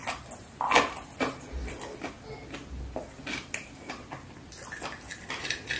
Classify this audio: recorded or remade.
recorded